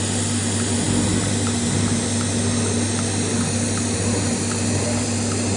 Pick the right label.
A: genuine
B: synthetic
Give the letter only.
A